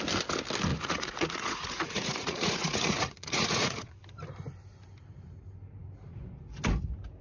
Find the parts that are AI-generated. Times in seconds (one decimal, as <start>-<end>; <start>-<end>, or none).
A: 0.7-4.0